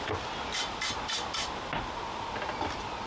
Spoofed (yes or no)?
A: no